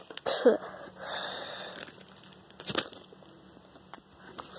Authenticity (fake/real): real